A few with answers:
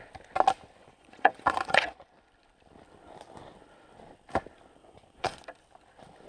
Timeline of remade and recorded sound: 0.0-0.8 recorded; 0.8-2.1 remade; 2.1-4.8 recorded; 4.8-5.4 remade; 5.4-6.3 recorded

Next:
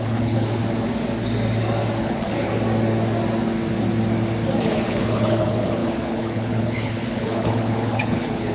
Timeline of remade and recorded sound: 0.0-0.6 remade; 0.6-2.0 recorded; 2.0-2.5 remade; 2.5-4.6 recorded; 4.6-8.5 remade

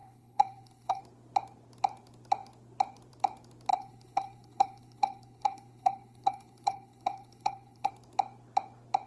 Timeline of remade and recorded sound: 0.0-1.0 remade; 1.0-3.7 recorded; 3.7-7.9 remade; 7.9-9.1 recorded